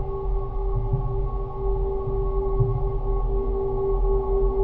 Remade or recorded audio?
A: recorded